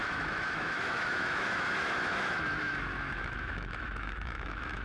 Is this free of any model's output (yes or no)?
no